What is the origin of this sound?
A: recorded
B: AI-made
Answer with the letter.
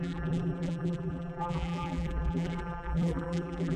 B